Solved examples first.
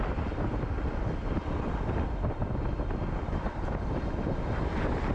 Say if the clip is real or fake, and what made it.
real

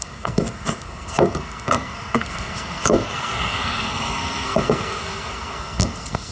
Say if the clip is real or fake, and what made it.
fake, codec, SNAC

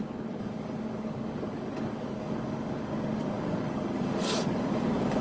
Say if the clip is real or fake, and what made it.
fake, codec, DAC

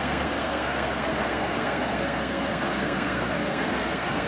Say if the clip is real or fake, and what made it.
fake, codec, SNAC